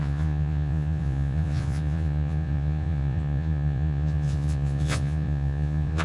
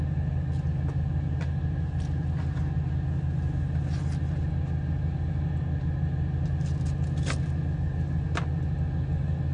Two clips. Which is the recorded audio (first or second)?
second